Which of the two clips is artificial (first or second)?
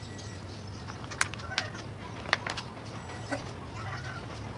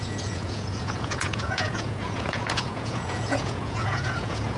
second